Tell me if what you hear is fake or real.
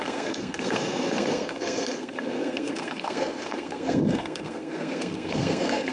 fake